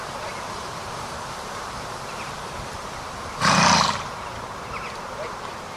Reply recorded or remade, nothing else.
remade